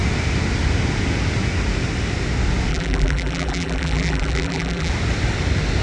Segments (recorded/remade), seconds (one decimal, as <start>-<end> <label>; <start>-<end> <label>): 0.0-2.7 recorded; 2.7-4.9 remade; 4.9-5.8 recorded